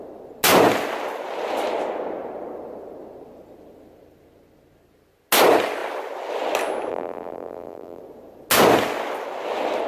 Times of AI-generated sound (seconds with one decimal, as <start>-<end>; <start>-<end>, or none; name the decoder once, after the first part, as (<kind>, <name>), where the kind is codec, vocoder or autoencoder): 6.9-8.0 (vocoder, BigVGAN v2)